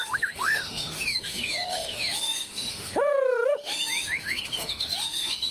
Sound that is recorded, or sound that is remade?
remade